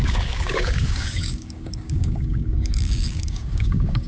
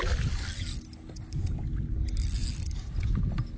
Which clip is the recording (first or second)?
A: second